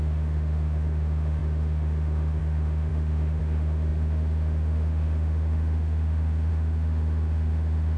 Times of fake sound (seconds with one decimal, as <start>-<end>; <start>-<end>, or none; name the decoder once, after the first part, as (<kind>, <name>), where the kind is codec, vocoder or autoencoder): 0.0-8.0 (autoencoder, DAC-VAE)